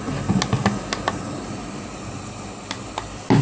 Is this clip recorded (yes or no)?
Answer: yes